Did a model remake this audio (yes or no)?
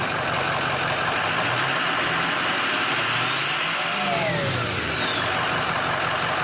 no